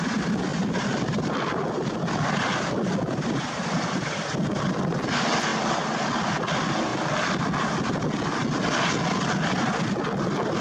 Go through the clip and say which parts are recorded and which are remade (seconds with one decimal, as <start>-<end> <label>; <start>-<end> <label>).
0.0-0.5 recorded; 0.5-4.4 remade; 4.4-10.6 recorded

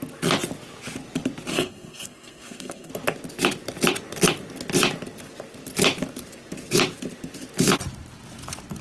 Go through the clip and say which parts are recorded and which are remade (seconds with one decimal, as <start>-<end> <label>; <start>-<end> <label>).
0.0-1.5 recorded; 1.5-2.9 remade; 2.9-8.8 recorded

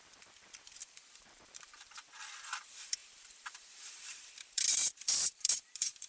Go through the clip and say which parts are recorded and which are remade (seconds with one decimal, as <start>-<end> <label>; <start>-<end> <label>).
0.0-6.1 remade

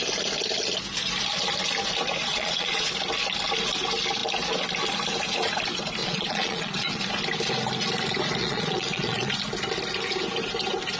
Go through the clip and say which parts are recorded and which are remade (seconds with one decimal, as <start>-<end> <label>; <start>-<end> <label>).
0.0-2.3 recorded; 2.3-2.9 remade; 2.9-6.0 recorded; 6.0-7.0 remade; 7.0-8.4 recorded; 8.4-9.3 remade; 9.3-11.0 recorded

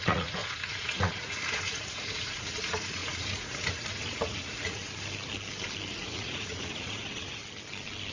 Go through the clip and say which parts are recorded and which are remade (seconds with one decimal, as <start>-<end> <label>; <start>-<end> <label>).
0.0-4.8 remade; 4.8-5.9 recorded; 5.9-7.4 remade; 7.4-8.1 recorded

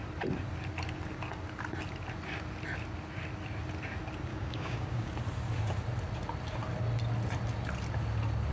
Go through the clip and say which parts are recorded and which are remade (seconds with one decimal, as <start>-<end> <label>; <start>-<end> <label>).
0.0-4.3 recorded; 4.3-5.1 remade; 5.1-8.5 recorded

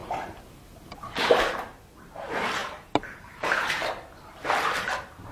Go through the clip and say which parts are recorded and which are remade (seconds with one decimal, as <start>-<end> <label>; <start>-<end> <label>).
0.0-1.3 remade; 1.3-2.6 recorded; 2.6-3.7 remade; 3.7-5.3 recorded

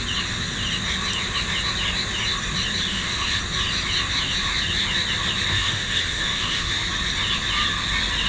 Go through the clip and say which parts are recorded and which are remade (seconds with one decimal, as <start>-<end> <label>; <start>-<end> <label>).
0.0-2.9 recorded; 2.9-3.4 remade; 3.4-5.5 recorded; 5.5-6.8 remade; 6.8-8.3 recorded